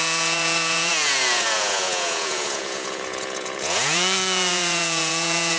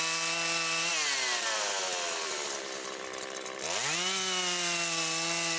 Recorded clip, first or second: second